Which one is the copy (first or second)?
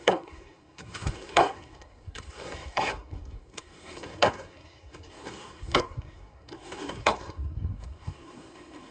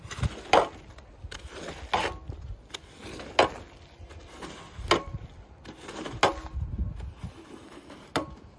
first